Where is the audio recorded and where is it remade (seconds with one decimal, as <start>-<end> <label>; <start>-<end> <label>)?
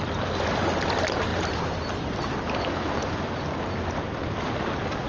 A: 0.0-5.1 recorded